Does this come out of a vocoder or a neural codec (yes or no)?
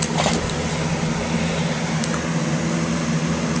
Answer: no